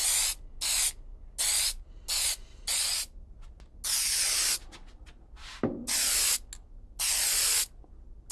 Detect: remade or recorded recorded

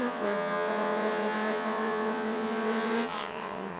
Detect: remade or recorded remade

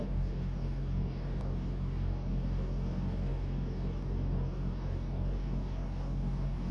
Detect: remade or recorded remade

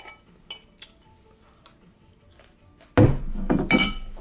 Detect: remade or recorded recorded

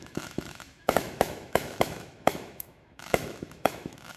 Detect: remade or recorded remade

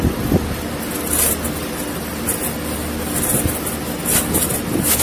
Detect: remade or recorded recorded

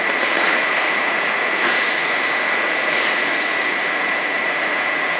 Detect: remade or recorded remade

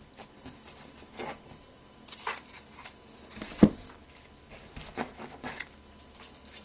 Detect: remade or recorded recorded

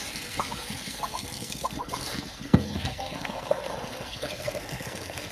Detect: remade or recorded remade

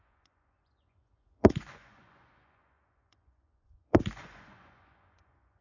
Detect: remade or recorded remade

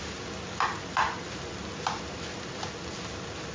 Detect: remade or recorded recorded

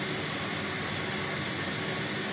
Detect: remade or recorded recorded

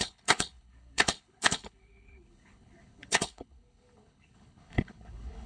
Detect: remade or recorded remade